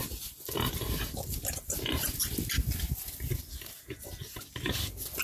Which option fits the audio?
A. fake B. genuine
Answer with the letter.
B